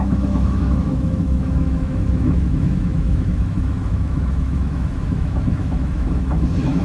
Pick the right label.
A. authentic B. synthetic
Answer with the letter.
B